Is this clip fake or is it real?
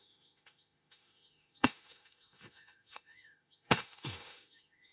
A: fake